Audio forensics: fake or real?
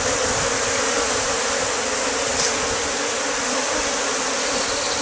real